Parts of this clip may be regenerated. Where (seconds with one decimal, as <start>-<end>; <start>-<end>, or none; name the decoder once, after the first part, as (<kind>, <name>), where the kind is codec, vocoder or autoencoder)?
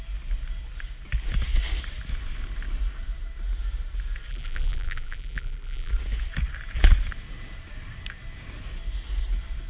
4.3-5.9 (vocoder, BigVGAN v2)